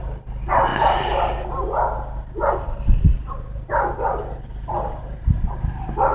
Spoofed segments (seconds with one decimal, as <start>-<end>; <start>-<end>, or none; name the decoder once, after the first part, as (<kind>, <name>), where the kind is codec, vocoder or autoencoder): none